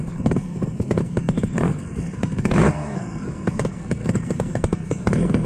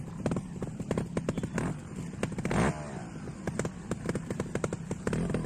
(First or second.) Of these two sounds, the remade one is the first